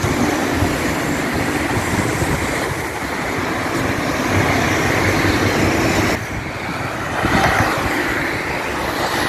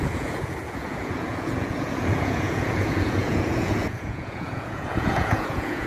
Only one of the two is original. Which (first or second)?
first